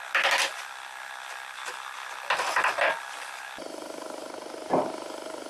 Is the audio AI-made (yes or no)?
no